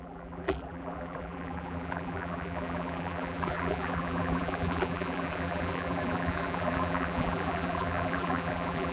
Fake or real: fake